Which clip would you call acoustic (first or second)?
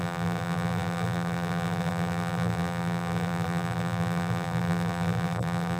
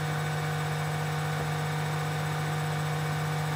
second